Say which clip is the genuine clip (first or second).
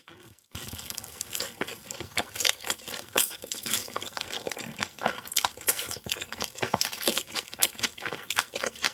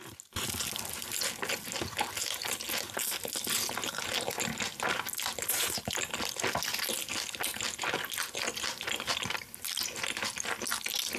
second